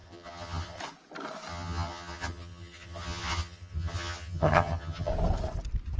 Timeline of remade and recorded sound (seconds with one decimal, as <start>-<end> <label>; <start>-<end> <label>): 0.0-0.8 remade; 0.8-1.5 recorded; 1.5-5.1 remade; 5.1-6.0 recorded